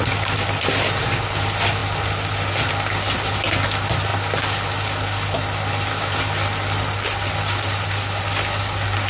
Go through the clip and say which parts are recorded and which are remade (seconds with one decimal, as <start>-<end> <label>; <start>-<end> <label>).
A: 0.0-9.1 recorded